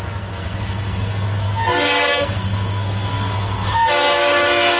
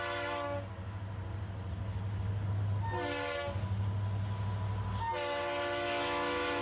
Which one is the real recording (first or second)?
second